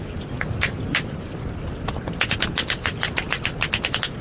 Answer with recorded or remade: recorded